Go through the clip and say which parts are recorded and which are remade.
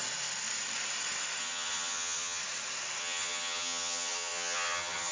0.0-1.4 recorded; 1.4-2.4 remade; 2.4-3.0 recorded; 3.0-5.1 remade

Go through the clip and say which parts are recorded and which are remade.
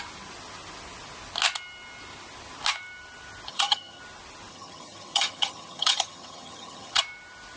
0.0-3.5 recorded; 3.5-4.0 remade; 4.0-4.5 recorded; 4.5-7.0 remade; 7.0-7.6 recorded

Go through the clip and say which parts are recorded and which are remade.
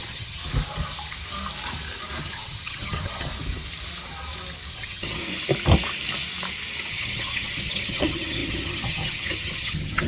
0.0-0.4 remade; 0.4-2.2 recorded; 2.2-3.3 remade; 3.3-4.7 recorded; 4.7-5.2 remade; 5.2-6.9 recorded; 6.9-10.1 remade